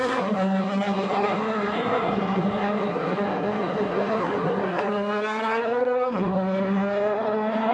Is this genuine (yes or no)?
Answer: no